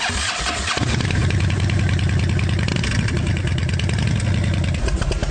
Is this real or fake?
real